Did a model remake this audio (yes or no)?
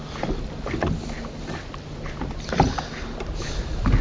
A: no